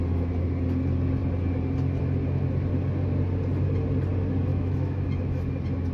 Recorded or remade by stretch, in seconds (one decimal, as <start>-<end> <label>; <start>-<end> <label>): 0.0-4.5 recorded; 4.5-5.4 remade; 5.4-5.9 recorded